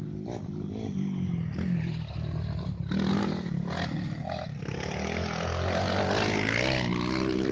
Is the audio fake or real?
real